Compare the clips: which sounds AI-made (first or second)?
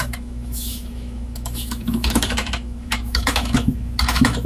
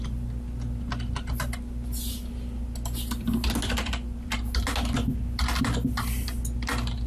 first